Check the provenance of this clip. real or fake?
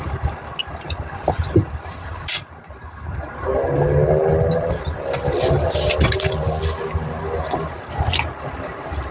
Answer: real